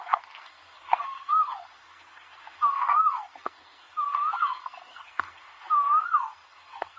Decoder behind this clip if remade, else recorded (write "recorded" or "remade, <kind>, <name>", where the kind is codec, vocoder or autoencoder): remade, codec, SNAC